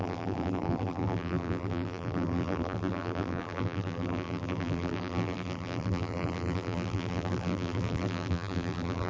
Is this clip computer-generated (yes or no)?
yes